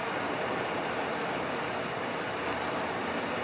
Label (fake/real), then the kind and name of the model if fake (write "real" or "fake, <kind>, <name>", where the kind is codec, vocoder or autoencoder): real